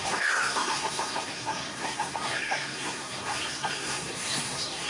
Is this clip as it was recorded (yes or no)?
no